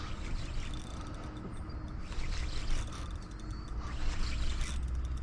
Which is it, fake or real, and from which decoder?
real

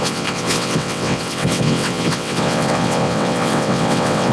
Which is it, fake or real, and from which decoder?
fake, vocoder, WaveNeXt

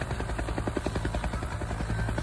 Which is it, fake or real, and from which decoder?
real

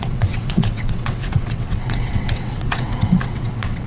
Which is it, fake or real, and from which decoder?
fake, vocoder, WaveNeXt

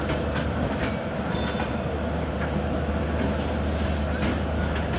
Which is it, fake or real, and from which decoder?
real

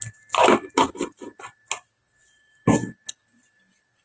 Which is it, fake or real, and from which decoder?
real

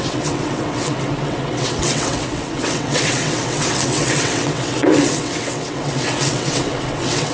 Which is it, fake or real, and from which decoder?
fake, vocoder, WaveNeXt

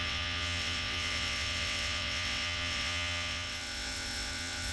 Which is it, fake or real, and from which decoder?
fake, vocoder, WaveNeXt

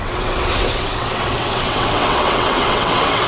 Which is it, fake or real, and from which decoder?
fake, vocoder, WaveNeXt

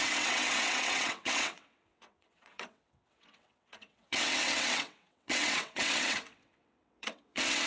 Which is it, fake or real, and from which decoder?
fake, vocoder, WaveNeXt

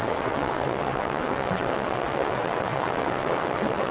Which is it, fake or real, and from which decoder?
fake, vocoder, WaveNeXt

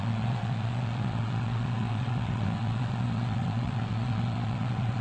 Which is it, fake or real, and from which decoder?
fake, vocoder, WaveNeXt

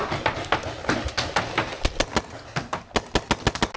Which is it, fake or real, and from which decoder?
real